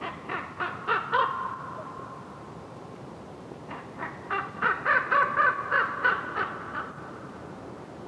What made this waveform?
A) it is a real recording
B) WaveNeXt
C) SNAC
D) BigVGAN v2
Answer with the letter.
D